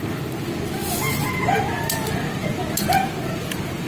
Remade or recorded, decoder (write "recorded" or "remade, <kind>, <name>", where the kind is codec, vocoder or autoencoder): recorded